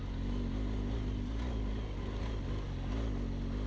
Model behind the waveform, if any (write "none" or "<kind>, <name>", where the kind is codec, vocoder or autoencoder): none